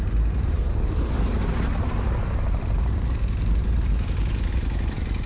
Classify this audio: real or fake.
fake